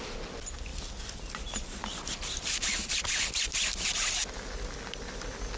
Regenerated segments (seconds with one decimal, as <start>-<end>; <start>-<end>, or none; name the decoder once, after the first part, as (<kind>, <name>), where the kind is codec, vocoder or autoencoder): none